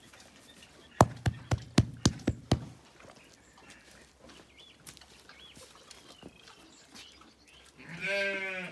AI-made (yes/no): no